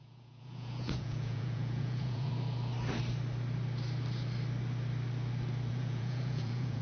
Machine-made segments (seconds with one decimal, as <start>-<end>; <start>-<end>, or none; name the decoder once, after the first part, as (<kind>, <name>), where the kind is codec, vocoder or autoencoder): 0.0-2.3 (vocoder, Vocos); 5.7-6.8